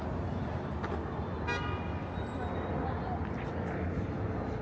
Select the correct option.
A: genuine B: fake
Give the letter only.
A